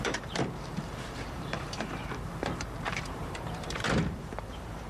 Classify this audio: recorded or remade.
remade